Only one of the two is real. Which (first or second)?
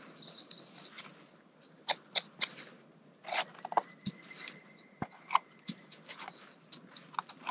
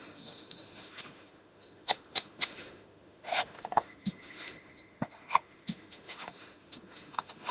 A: first